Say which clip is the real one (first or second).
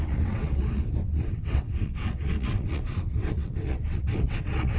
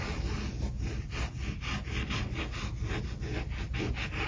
second